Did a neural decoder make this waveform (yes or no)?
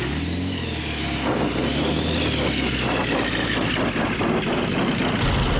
no